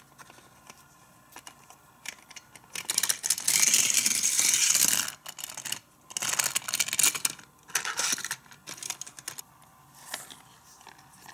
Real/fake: real